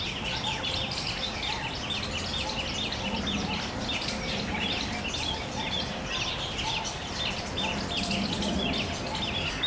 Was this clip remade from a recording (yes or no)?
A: no